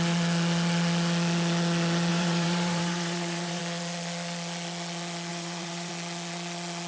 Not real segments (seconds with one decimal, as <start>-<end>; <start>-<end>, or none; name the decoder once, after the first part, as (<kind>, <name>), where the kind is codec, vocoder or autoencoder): 2.1-3.6 (vocoder, BigVGAN v2); 5.3-5.9